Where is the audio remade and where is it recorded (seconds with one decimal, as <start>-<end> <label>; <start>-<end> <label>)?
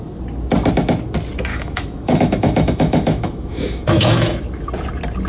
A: 0.0-1.5 recorded; 1.5-4.7 remade; 4.7-5.3 recorded